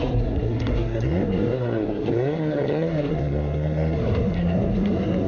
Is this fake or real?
fake